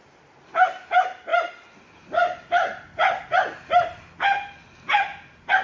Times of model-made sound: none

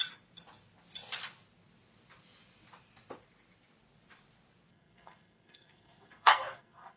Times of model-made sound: 4.7-7.0 (codec, SNAC)

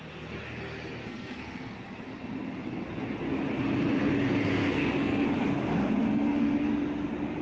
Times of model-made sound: 1.0-1.7 (codec, SNAC); 4.6-5.3; 6.0-6.7

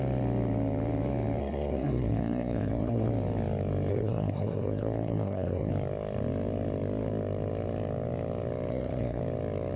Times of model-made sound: 1.4-3.1 (codec, SNAC); 3.9-5.7; 8.7-9.2

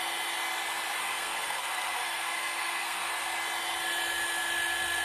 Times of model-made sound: 1.0-3.1 (codec, SNAC)

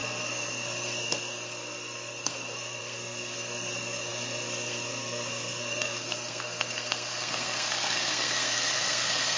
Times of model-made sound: 0.0-9.4 (codec, SNAC)

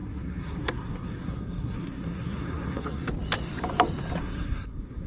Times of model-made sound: 0.0-3.1 (codec, SNAC); 4.2-5.1